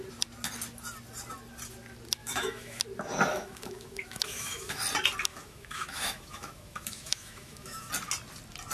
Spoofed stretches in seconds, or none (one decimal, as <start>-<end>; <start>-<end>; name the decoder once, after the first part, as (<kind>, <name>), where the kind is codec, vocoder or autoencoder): 2.2-2.8 (autoencoder, DAC-VAE); 3.3-4.8; 5.3-7.9